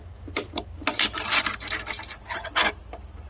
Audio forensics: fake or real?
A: real